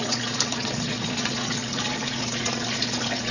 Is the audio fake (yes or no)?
yes